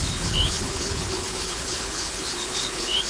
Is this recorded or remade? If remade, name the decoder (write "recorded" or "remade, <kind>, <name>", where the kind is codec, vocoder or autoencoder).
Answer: remade, codec, HILCodec